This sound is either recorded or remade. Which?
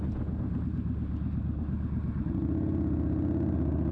recorded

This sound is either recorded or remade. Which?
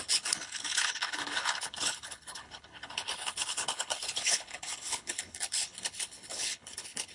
remade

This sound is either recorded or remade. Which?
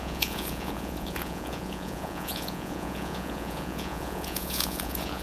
remade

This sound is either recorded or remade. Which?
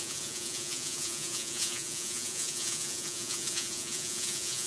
remade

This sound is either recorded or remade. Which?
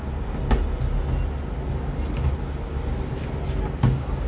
recorded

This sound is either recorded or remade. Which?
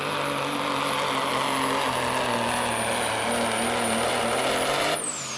recorded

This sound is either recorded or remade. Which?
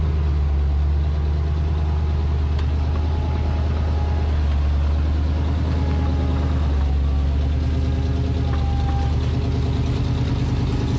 recorded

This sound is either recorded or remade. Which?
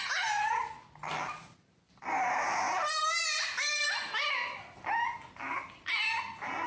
recorded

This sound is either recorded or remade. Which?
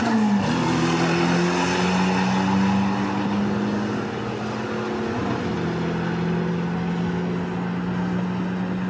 recorded